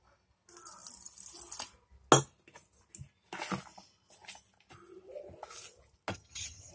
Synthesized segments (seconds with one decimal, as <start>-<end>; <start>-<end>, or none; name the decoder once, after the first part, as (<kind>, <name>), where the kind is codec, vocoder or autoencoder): 6.1-6.7 (vocoder, HiFi-GAN)